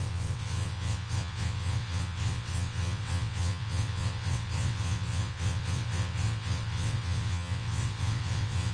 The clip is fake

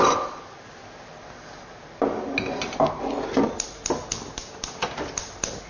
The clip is real